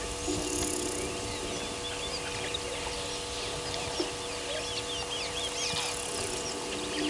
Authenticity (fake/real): real